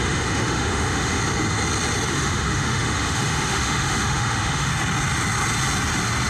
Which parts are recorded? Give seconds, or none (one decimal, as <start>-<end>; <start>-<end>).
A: 1.2-2.1; 4.7-6.3